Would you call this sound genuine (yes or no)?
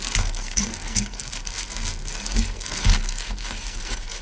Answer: no